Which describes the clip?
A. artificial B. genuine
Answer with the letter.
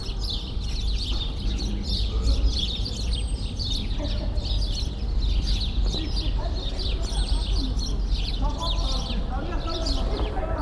B